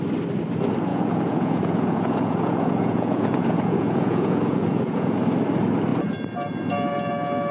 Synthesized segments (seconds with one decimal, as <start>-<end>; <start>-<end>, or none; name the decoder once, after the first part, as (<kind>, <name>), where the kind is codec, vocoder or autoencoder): 0.9-5.2 (vocoder, Vocos)